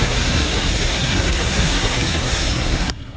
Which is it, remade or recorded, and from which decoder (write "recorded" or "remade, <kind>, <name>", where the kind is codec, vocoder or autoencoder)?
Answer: remade, codec, SNAC